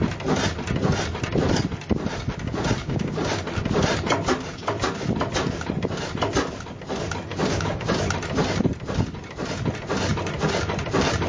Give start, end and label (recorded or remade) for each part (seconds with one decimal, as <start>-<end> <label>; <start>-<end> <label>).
0.0-2.8 recorded; 2.8-3.4 remade; 3.4-7.3 recorded; 7.3-7.9 remade; 7.9-11.3 recorded